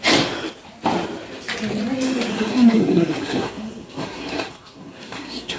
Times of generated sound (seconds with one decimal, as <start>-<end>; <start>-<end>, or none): 2.3-5.6